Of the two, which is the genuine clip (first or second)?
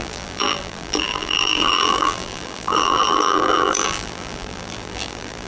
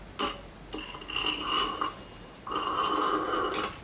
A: second